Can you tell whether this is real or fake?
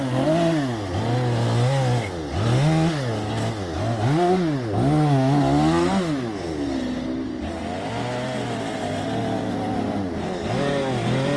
real